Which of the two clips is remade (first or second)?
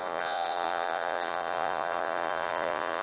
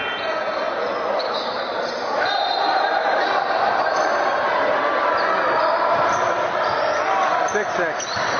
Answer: first